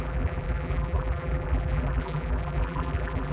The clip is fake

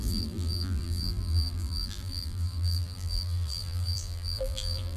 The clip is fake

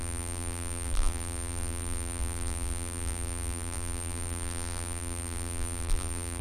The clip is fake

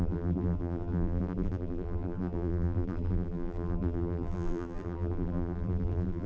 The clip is fake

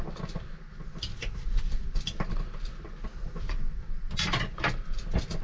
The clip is real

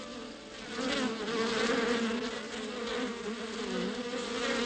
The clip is real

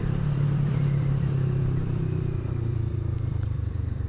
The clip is fake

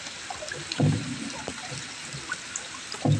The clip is real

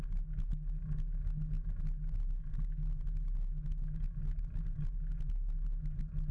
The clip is real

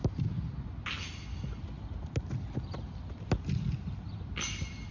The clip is real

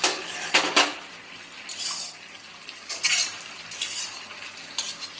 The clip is real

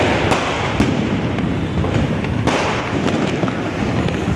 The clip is real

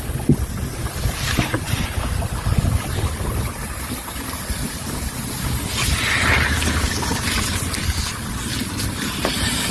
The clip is fake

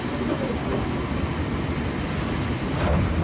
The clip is fake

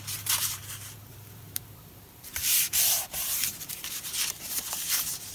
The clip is fake